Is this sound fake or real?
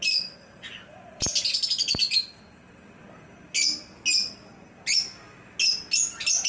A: real